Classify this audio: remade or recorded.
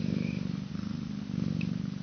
recorded